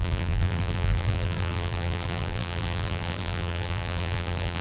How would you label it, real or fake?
fake